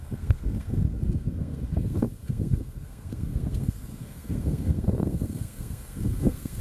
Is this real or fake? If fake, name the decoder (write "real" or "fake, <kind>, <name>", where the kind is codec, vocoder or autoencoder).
fake, codec, SNAC